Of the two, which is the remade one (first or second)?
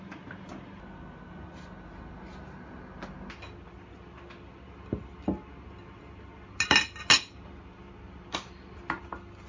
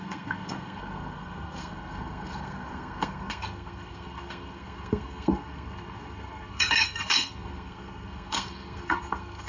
second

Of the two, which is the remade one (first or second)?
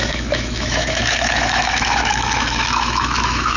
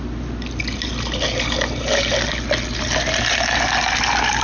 first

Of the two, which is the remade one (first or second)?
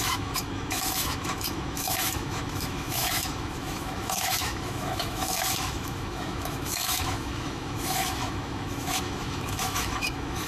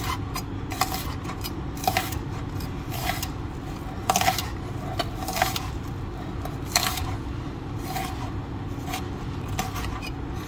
first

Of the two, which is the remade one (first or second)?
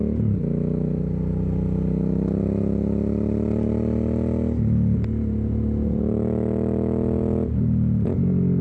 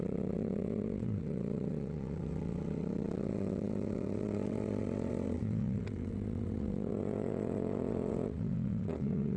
second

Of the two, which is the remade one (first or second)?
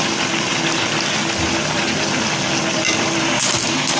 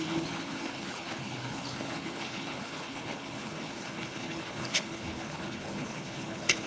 second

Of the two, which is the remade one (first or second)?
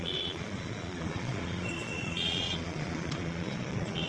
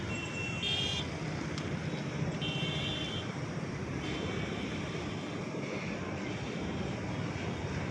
first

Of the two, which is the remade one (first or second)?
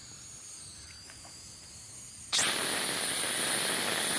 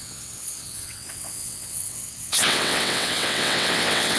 second